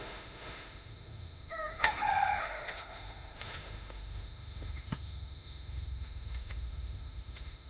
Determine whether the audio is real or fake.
fake